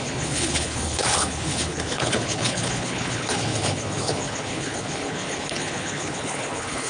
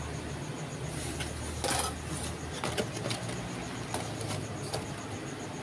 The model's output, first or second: first